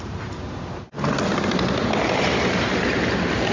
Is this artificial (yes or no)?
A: no